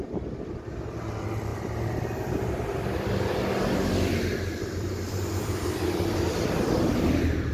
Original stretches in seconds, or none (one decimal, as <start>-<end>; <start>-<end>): 0.0-1.5; 2.3-4.3